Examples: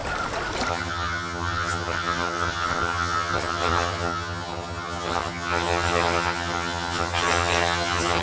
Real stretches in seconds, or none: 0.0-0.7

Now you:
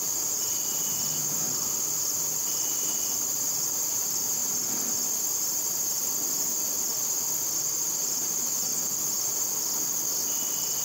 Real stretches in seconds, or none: 4.4-7.9; 8.7-10.8

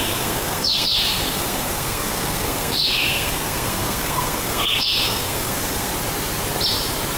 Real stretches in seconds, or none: 5.9-7.2